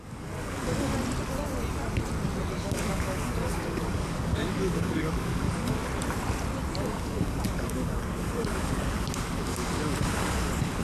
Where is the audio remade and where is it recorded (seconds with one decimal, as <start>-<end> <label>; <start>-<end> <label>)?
0.0-0.9 remade; 0.9-2.6 recorded; 2.6-5.8 remade; 5.8-6.8 recorded; 6.8-10.8 remade